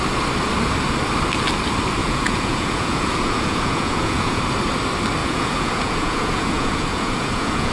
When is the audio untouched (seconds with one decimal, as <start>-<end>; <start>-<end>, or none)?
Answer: 0.0-2.0; 4.4-5.2